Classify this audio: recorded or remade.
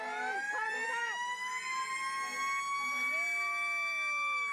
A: recorded